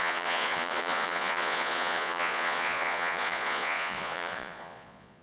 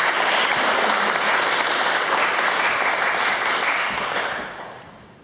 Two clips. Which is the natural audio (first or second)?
second